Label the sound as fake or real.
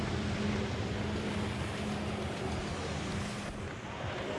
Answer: real